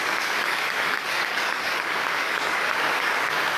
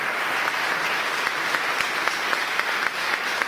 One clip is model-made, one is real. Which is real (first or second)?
second